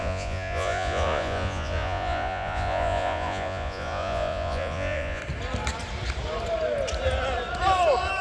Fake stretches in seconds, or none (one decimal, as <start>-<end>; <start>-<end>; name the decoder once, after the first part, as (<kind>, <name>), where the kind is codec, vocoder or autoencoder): 0.0-5.2 (vocoder, Vocos)